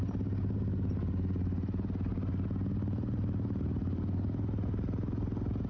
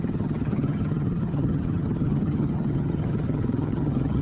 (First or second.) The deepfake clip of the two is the second